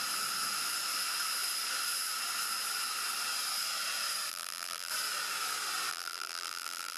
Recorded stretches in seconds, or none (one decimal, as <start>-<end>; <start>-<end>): 0.0-4.3; 4.9-5.9